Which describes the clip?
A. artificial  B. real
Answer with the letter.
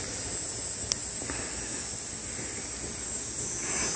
B